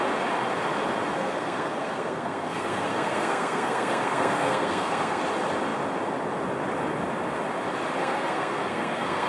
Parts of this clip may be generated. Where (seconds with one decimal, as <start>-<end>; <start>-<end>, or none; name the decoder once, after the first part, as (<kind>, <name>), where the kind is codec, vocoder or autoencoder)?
1.2-5.2 (codec, SNAC); 8.0-9.3